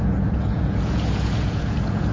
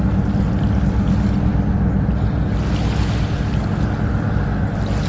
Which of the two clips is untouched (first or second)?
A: second